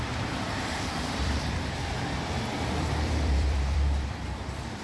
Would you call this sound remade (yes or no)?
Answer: yes